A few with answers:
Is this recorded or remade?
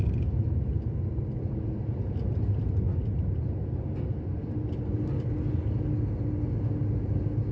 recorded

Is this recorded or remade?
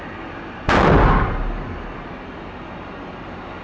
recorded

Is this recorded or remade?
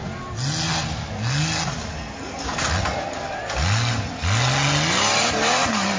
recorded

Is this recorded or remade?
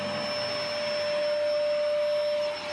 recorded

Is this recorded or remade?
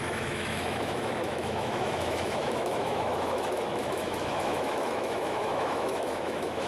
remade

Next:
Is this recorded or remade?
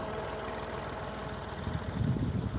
recorded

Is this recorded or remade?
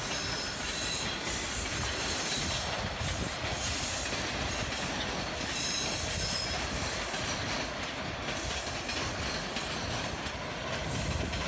recorded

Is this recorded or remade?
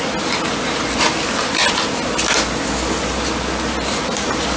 recorded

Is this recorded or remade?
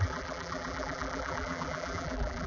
remade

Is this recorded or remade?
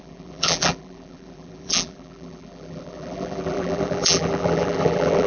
remade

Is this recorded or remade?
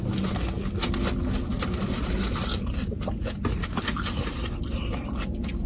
recorded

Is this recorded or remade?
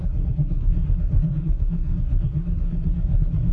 remade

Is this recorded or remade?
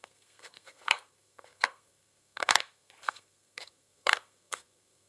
remade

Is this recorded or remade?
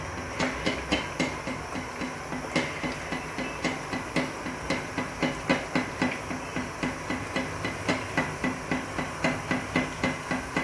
recorded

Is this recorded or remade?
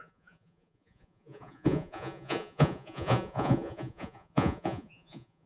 remade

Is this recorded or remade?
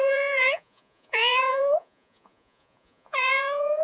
remade